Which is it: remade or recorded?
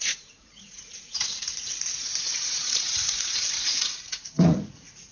remade